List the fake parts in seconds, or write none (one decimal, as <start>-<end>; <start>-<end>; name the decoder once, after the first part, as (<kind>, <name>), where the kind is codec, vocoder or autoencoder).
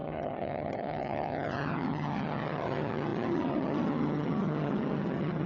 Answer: 0.0-5.5 (vocoder, HiFi-GAN)